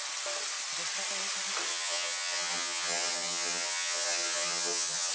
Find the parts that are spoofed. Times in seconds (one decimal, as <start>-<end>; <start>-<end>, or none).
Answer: 1.7-5.1